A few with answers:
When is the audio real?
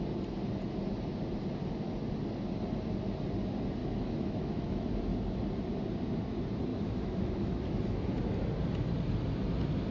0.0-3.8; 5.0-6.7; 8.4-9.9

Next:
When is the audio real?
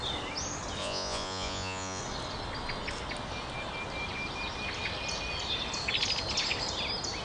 0.0-0.8; 2.0-7.2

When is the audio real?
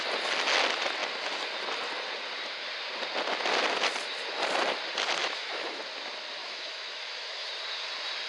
0.0-5.2; 5.8-6.4; 7.5-8.3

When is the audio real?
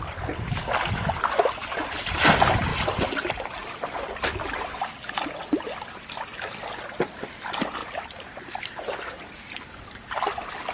0.0-7.8; 8.4-10.7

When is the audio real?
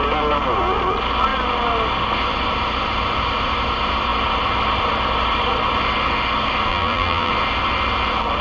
0.0-6.7; 7.3-8.4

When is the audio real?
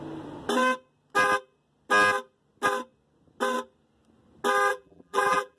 0.0-4.7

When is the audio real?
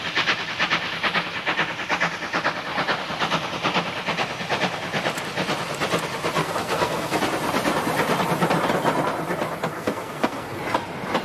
0.0-6.4; 7.2-9.7; 10.6-11.2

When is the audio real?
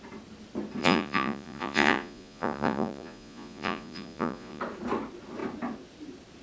0.0-0.8; 4.6-6.4